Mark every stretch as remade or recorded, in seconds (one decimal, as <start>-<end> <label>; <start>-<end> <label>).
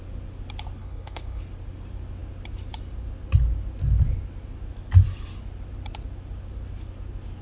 0.0-0.8 recorded; 0.8-1.4 remade; 1.4-7.4 recorded